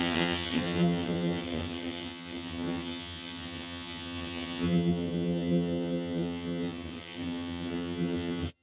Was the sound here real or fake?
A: fake